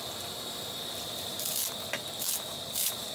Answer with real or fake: real